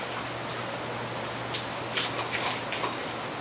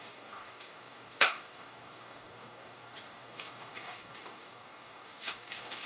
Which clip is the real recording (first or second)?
first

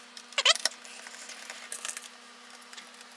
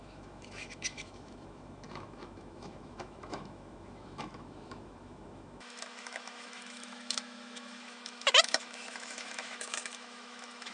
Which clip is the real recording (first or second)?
first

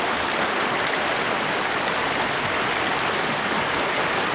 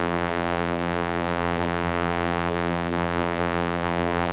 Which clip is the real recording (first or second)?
first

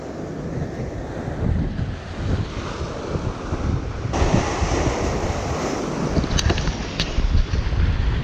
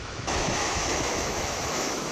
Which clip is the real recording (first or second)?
first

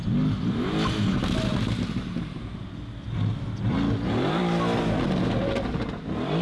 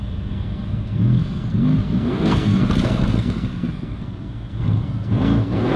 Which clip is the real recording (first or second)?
first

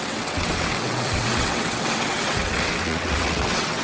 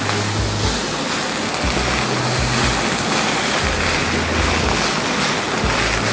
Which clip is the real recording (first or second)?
second